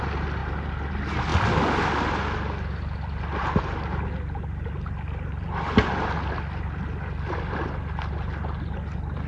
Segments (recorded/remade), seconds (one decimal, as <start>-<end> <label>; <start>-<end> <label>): 0.0-9.3 recorded

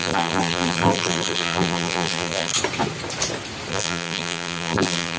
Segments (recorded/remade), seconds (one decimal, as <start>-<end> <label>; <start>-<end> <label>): 0.0-2.5 remade; 2.5-3.7 recorded; 3.7-5.2 remade

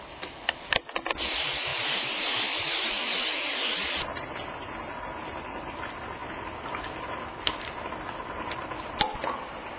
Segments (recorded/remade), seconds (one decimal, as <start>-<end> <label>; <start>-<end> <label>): 0.0-1.7 recorded; 1.7-2.9 remade; 2.9-9.8 recorded

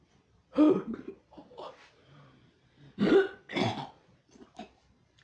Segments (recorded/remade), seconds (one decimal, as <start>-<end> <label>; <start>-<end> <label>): 0.0-1.4 recorded; 1.4-3.1 remade; 3.1-5.2 recorded

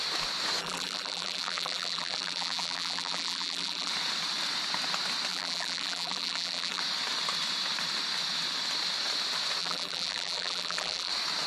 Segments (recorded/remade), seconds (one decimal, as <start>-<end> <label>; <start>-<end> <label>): 0.0-0.6 recorded; 0.6-3.9 remade; 3.9-5.3 recorded; 5.3-6.8 remade; 6.8-9.6 recorded; 9.6-11.1 remade; 11.1-11.5 recorded